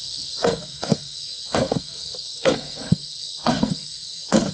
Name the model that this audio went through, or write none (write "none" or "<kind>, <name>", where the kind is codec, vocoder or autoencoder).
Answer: codec, SNAC